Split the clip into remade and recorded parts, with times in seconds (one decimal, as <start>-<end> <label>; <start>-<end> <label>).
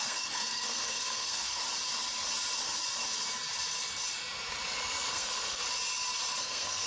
0.0-1.6 remade; 1.6-5.1 recorded; 5.1-5.6 remade; 5.6-6.4 recorded; 6.4-6.9 remade